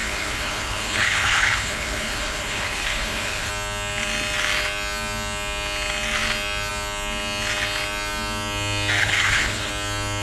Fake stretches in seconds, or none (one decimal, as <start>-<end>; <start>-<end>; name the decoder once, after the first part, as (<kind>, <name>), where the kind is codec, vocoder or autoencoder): 0.0-3.5 (codec, HILCodec); 9.0-9.7